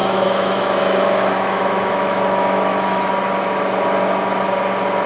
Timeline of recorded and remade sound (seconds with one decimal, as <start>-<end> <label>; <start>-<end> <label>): 0.0-3.1 remade; 3.1-5.1 recorded